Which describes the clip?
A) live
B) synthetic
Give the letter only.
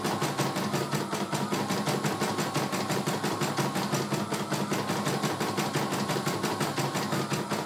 A